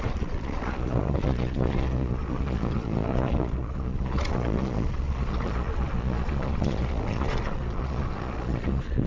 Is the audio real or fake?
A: fake